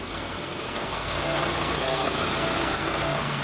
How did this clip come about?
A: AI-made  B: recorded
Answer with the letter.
A